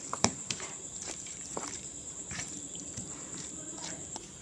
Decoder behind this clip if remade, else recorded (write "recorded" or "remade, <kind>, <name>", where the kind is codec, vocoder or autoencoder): remade, vocoder, BigVGAN v2